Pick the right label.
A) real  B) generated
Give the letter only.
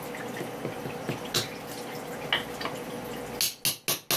A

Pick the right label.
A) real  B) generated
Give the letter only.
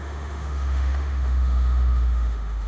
B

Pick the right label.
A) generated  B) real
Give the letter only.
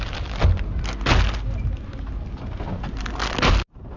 B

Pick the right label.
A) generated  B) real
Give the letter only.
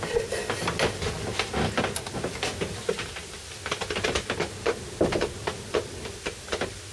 B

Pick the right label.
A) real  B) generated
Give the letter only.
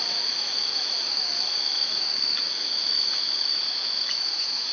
B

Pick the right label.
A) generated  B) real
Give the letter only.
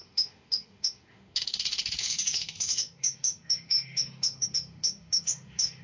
A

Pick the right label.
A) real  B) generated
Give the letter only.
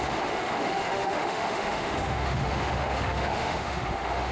B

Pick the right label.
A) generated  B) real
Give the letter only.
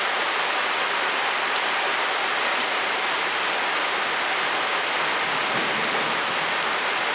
B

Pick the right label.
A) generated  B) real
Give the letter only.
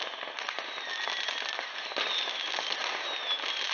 B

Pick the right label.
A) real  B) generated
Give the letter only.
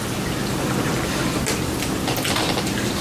A